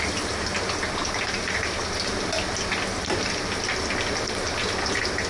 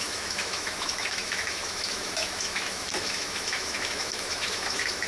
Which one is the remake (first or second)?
second